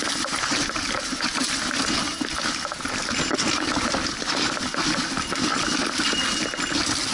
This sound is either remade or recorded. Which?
recorded